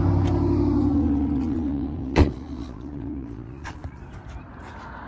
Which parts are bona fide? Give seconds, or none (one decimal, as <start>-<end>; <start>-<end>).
0.0-0.9; 4.0-5.1